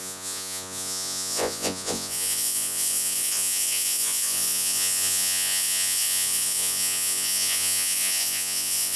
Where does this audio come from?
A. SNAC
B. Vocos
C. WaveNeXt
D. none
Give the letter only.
B